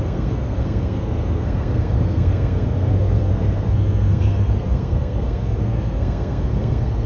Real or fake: fake